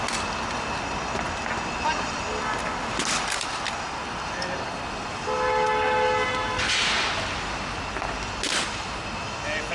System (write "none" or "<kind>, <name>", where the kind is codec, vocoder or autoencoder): none